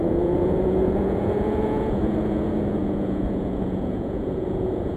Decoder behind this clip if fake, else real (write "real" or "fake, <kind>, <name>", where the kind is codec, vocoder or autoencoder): fake, vocoder, Vocos